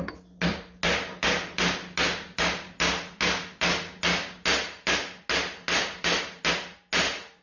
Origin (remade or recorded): recorded